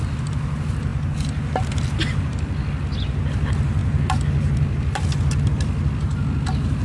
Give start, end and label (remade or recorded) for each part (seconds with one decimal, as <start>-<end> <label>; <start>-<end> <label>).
0.0-6.8 recorded